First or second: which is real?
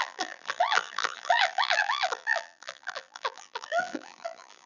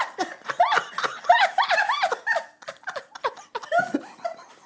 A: second